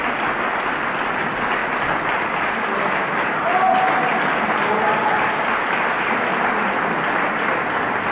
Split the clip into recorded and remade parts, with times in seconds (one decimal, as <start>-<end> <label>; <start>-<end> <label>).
0.0-8.1 recorded